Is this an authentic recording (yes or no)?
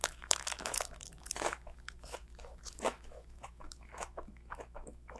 no